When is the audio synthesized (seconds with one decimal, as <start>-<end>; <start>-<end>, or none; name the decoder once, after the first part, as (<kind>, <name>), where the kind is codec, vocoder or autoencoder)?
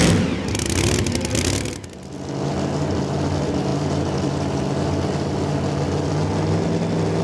none